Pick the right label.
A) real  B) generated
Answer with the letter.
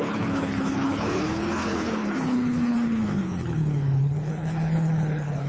B